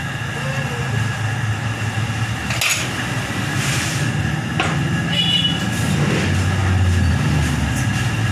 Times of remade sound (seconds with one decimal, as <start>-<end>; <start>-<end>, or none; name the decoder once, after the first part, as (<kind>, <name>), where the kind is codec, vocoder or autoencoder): none